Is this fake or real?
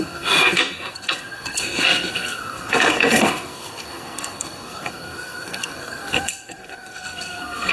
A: fake